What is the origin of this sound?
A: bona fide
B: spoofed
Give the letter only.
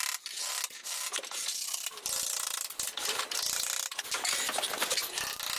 A